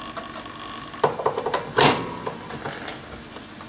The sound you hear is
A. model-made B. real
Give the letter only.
B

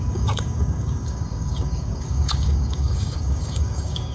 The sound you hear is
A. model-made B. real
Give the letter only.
A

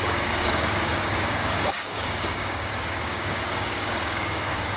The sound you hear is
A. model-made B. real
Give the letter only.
A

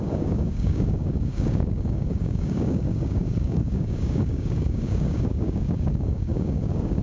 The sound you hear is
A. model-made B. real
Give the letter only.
A